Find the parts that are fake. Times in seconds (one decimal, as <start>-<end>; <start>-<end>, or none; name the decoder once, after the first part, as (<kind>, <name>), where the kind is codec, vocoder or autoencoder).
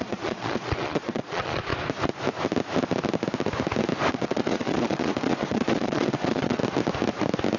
0.0-1.7 (vocoder, Vocos); 4.1-6.6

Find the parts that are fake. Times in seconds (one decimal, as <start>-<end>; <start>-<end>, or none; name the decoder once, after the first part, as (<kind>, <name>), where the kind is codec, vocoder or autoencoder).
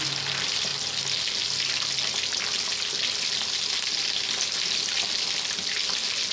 none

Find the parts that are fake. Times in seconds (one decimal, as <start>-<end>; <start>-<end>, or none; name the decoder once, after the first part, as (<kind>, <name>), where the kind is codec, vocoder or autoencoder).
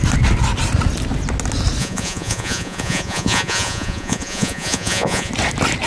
1.8-5.3 (vocoder, Vocos)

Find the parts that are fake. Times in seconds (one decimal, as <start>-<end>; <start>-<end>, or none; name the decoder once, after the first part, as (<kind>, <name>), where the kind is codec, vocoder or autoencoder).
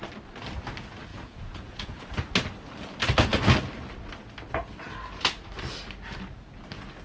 1.1-2.0 (vocoder, Vocos)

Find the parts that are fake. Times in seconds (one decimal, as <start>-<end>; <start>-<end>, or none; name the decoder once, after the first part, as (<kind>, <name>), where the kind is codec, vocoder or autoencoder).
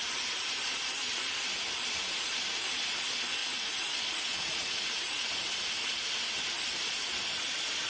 3.4-5.3 (vocoder, Vocos)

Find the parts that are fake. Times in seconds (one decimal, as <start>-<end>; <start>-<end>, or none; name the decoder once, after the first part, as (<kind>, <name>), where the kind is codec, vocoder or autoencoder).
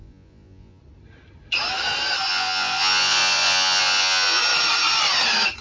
0.0-0.8 (vocoder, Vocos); 2.3-4.4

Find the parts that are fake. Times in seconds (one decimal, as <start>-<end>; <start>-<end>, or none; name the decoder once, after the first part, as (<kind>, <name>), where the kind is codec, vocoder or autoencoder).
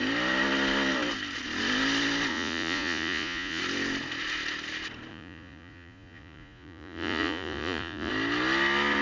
2.3-3.6 (vocoder, Vocos); 5.1-8.1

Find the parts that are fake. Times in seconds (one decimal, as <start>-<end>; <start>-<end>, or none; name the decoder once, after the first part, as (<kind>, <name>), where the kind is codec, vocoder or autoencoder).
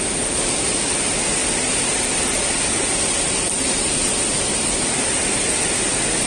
none